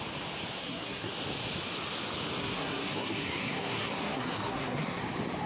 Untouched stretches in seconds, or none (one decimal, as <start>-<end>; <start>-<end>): 0.0-0.6; 1.1-2.4; 5.0-5.5